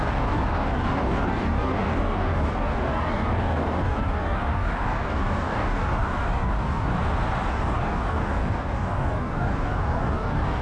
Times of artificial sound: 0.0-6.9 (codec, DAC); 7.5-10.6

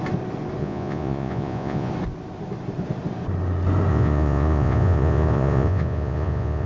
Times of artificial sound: 0.6-1.9 (vocoder, Vocos); 3.9-6.7

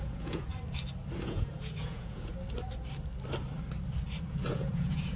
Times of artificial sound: 0.0-0.5 (vocoder, Vocos); 1.2-2.3; 4.3-5.2